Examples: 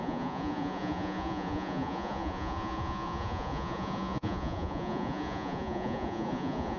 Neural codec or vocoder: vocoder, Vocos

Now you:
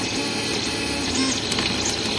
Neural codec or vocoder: none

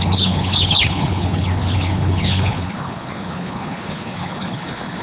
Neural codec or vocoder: codec, HILCodec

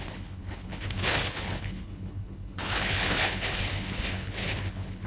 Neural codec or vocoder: codec, HILCodec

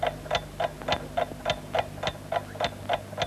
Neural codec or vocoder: none